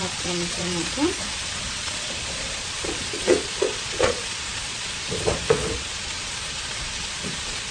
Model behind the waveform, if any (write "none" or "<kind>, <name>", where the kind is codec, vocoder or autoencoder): vocoder, Vocos